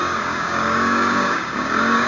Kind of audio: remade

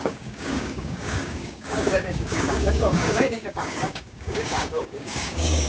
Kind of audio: remade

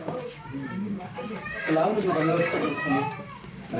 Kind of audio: remade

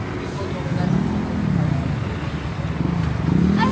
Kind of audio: recorded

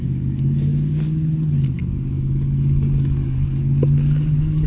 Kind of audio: remade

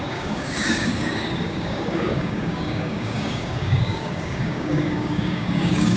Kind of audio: remade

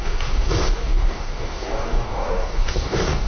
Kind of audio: remade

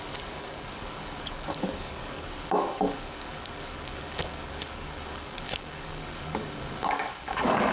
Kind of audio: remade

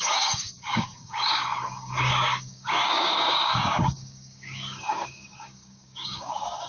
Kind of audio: remade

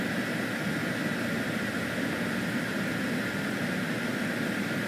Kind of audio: recorded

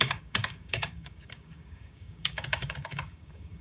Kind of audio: remade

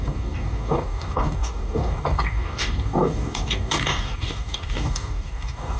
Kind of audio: remade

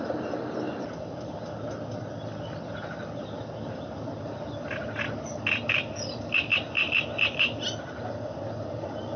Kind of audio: recorded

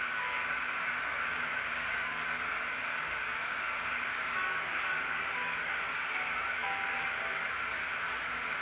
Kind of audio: remade